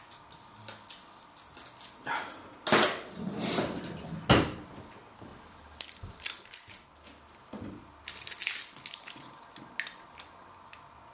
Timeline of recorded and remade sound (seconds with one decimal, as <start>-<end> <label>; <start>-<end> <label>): 0.0-11.1 recorded

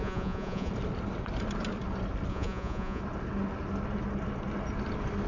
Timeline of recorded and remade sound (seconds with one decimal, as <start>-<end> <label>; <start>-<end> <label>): 0.0-0.7 remade; 0.7-2.3 recorded; 2.3-3.0 remade; 3.0-5.3 recorded

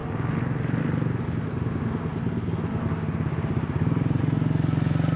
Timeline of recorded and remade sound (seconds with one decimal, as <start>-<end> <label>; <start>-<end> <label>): 0.0-0.8 remade; 0.8-2.1 recorded; 2.1-4.2 remade; 4.2-5.2 recorded